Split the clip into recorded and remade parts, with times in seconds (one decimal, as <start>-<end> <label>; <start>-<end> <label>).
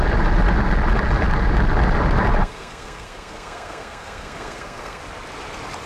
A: 0.0-2.4 recorded; 2.4-5.0 remade; 5.0-5.9 recorded